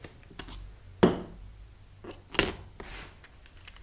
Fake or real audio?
real